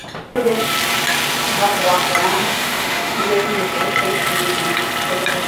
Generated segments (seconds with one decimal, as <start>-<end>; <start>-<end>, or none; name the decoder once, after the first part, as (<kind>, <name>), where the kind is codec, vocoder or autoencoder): 2.3-3.3 (autoencoder, DAC-VAE)